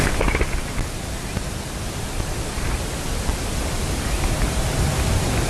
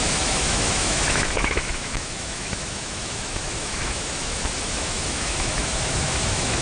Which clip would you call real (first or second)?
first